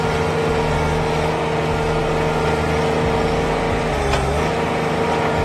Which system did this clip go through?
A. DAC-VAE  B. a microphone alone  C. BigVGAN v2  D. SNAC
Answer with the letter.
B